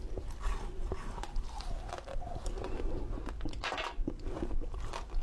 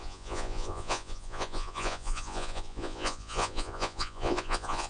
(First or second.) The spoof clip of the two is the second